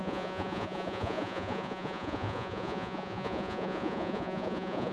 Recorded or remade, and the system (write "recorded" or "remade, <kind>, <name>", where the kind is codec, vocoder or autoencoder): remade, vocoder, Vocos